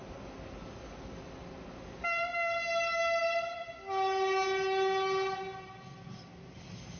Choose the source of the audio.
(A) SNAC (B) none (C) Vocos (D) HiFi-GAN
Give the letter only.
B